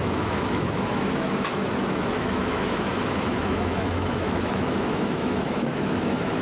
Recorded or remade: remade